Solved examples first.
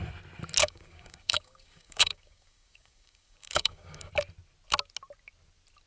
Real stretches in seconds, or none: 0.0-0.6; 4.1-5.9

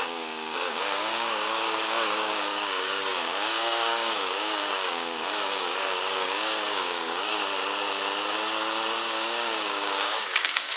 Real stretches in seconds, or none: 7.3-9.0

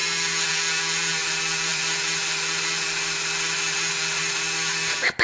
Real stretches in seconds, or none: 0.0-5.2

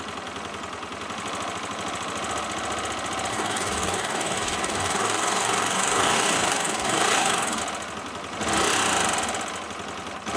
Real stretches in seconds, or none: 0.0-3.3; 7.6-10.4

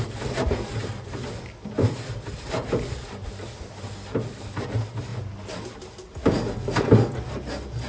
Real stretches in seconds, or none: 0.0-7.9

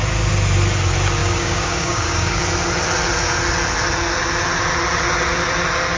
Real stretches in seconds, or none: 0.0-1.2; 2.4-6.0